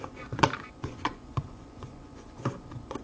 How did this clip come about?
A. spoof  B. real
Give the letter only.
A